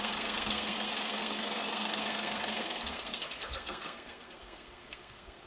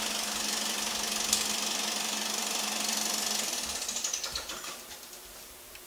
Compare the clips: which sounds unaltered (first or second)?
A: second